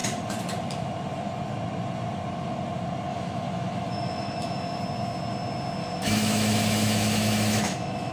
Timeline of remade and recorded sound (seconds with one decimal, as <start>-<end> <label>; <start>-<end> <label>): 0.0-3.1 recorded; 3.1-4.8 remade; 4.8-5.8 recorded; 5.8-8.1 remade